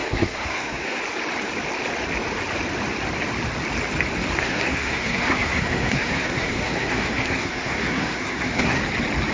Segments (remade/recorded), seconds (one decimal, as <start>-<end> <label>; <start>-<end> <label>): 0.0-1.0 remade; 1.0-4.4 recorded; 4.4-8.8 remade; 8.8-9.3 recorded